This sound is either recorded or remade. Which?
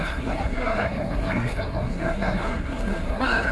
remade